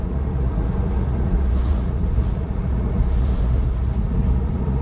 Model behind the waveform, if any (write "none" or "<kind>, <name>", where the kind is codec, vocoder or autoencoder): vocoder, Vocos